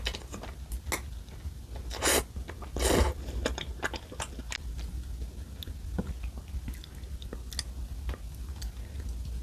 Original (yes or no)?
yes